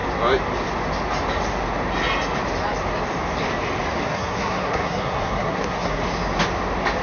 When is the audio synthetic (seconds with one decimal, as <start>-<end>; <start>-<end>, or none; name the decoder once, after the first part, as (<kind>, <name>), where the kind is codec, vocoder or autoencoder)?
4.0-6.0 (codec, SNAC)